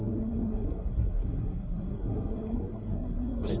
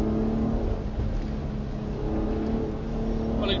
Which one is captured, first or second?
second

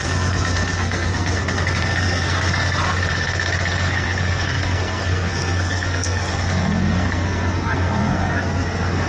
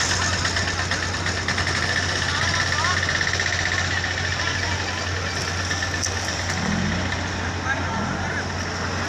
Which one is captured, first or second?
second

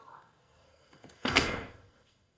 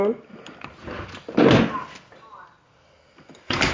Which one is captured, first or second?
second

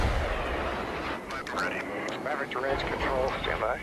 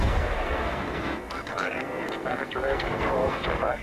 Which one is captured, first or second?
first